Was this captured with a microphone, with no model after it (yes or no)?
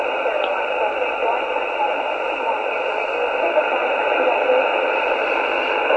yes